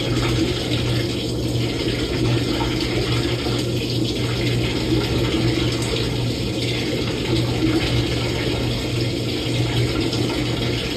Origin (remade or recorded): recorded